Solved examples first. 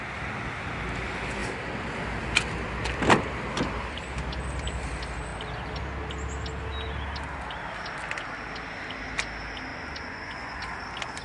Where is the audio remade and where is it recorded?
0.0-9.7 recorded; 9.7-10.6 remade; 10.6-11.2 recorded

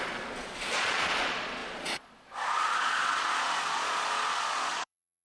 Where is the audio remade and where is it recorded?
0.0-5.2 remade

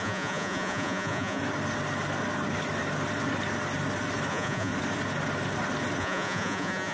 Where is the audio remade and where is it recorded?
0.0-1.4 remade; 1.4-4.3 recorded; 4.3-4.7 remade; 4.7-6.0 recorded; 6.0-6.9 remade